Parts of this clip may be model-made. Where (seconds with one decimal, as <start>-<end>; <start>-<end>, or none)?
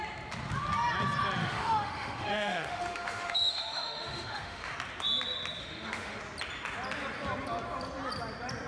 1.4-4.7; 5.6-6.2